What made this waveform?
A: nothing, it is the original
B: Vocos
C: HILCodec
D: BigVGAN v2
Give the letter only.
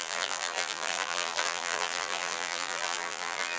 D